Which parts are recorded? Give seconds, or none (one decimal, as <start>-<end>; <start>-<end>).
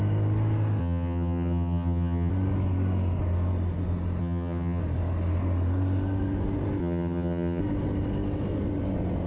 0.0-0.8; 2.3-4.2; 4.8-6.8; 7.6-9.3